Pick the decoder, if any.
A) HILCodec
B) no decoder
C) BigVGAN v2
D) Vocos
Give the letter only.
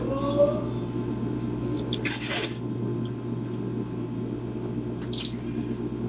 B